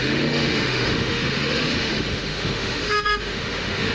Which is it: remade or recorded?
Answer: remade